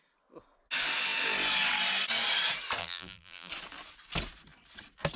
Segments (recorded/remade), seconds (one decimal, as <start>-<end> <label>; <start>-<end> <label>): 0.0-2.8 recorded; 2.8-3.5 remade; 3.5-5.2 recorded